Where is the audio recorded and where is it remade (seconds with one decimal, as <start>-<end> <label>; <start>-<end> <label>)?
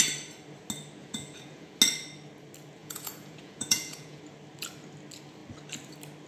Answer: 0.0-1.0 recorded; 1.0-1.8 remade; 1.8-2.8 recorded; 2.8-4.2 remade; 4.2-6.3 recorded